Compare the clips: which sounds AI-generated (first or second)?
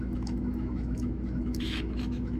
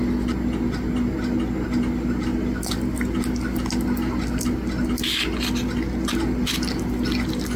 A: first